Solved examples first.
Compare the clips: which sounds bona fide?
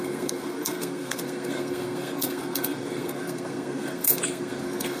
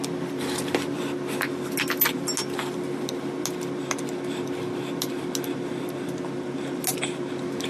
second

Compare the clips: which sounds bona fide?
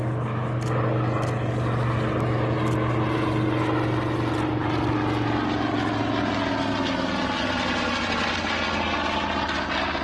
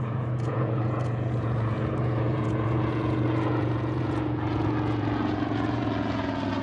first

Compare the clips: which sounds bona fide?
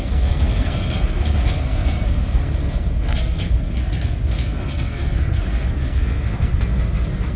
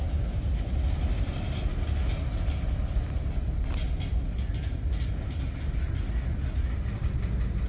second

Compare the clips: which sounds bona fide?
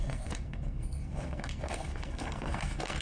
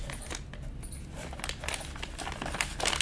second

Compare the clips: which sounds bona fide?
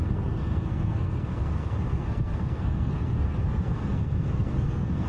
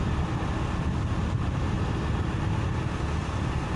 second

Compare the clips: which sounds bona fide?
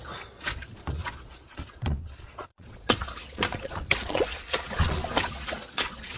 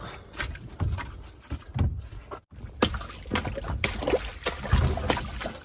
second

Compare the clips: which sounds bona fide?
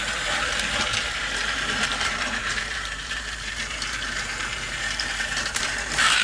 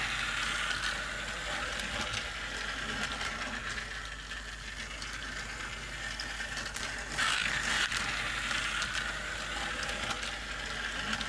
second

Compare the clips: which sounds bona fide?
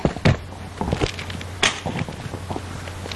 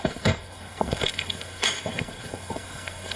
first